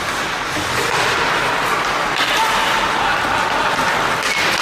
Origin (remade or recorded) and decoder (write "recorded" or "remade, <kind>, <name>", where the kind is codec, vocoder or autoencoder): recorded